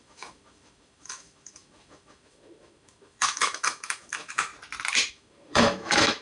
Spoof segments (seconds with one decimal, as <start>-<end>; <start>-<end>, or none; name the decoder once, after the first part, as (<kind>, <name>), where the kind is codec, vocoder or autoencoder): 0.0-4.5 (autoencoder, DAC-VAE); 5.1-6.2